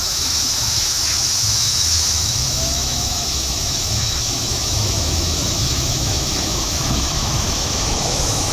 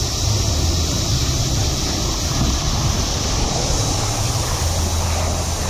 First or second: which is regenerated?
first